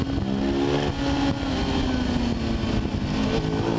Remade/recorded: recorded